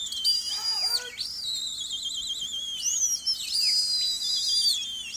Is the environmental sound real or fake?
real